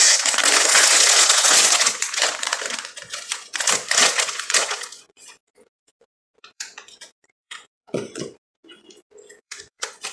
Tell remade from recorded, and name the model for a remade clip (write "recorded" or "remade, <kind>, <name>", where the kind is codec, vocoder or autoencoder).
remade, vocoder, Vocos